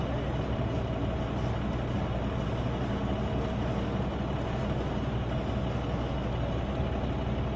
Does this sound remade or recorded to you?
recorded